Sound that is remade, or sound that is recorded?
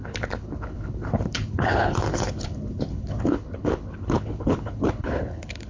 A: remade